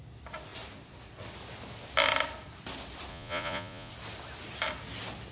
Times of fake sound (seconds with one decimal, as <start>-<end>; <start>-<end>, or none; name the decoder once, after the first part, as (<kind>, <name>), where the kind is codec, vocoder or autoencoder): 3.1-3.9 (vocoder, Vocos)